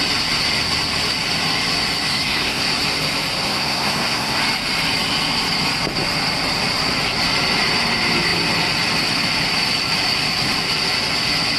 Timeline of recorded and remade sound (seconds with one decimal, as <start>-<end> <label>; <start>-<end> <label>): 0.0-2.1 recorded; 2.1-2.6 remade; 2.6-3.5 recorded; 3.5-4.4 remade; 4.4-11.6 recorded